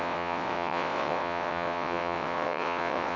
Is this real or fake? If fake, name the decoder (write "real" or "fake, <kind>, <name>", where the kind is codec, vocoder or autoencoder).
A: fake, vocoder, WaveNeXt